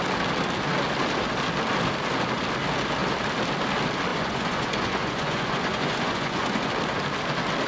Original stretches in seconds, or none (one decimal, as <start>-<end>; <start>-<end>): 0.0-4.1; 6.7-7.7